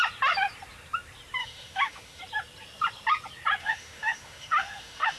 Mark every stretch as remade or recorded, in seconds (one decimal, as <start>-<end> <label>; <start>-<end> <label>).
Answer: 0.0-1.4 recorded; 1.4-2.2 remade; 2.2-3.6 recorded; 3.6-5.2 remade